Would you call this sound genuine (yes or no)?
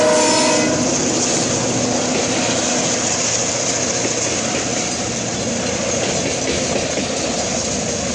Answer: yes